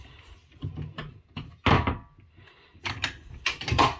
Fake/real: real